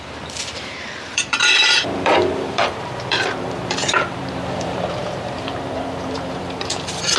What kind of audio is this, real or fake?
fake